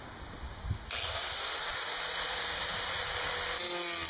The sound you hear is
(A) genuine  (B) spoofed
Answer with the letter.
A